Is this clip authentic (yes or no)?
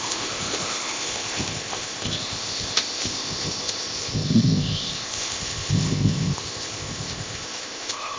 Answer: no